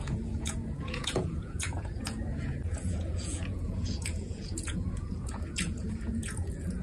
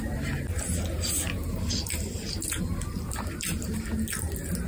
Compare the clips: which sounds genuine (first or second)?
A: second